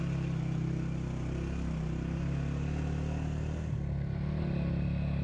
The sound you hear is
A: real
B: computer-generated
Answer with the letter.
A